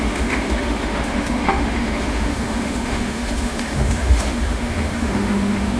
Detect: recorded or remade remade